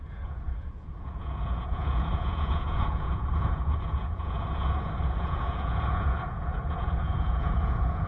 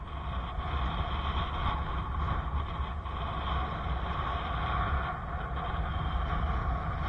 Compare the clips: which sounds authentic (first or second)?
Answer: second